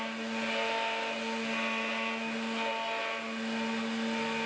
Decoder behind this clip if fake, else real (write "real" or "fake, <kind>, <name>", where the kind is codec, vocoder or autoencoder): real